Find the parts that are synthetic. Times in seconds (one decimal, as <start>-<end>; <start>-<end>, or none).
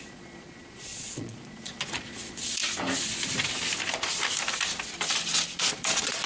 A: 0.0-2.6; 5.7-6.3